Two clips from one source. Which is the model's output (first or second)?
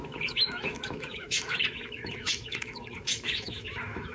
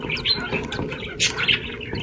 first